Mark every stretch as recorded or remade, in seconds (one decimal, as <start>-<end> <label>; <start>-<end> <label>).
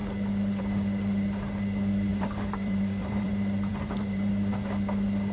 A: 0.0-2.1 recorded; 2.1-3.3 remade; 3.3-3.7 recorded; 3.7-4.3 remade; 4.3-5.3 recorded